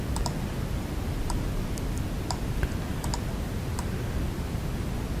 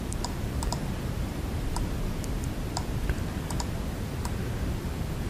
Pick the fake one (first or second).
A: second